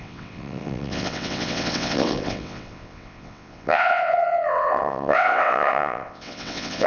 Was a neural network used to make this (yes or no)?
yes